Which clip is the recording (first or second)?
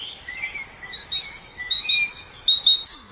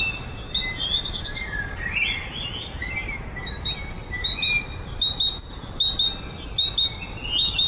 second